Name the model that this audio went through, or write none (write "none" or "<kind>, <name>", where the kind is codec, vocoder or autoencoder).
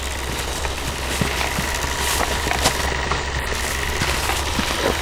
none